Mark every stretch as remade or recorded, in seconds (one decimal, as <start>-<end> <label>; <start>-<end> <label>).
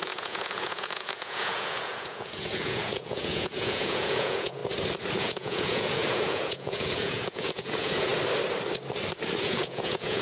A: 0.0-4.6 remade; 4.6-5.2 recorded; 5.2-8.1 remade; 8.1-9.4 recorded; 9.4-10.2 remade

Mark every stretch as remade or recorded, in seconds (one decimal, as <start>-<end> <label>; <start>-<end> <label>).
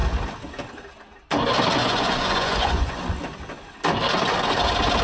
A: 0.0-1.8 recorded; 1.8-3.0 remade; 3.0-5.0 recorded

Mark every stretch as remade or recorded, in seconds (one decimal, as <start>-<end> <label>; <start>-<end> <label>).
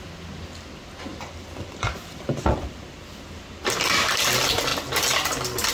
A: 0.0-1.1 recorded; 1.1-2.4 remade; 2.4-5.7 recorded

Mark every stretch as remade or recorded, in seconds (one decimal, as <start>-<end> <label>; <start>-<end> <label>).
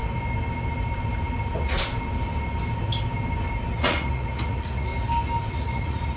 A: 0.0-3.7 recorded; 3.7-4.9 remade; 4.9-5.5 recorded; 5.5-6.2 remade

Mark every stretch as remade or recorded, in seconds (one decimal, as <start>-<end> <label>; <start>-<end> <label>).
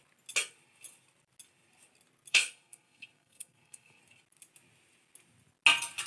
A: 0.0-2.3 recorded; 2.3-4.0 remade; 4.0-6.1 recorded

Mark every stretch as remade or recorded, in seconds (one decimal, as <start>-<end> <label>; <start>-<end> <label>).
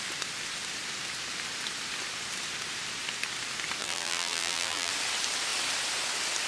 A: 0.0-3.8 recorded; 3.8-4.9 remade; 4.9-6.5 recorded